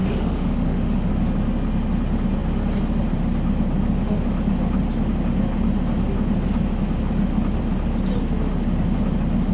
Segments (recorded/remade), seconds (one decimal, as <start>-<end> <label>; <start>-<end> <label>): 0.0-1.1 remade; 1.1-9.5 recorded